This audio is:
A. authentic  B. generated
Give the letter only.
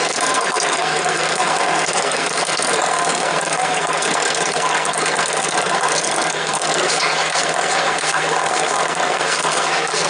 B